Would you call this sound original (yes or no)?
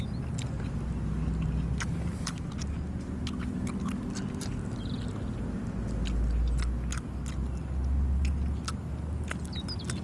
yes